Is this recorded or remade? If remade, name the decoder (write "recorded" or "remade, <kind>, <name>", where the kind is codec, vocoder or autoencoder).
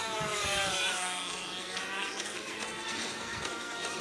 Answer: remade, codec, SNAC